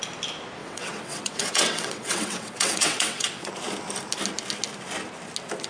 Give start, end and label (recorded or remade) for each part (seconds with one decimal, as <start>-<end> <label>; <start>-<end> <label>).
0.0-0.6 recorded; 0.6-3.5 remade; 3.5-5.7 recorded